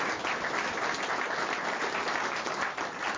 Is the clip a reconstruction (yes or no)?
no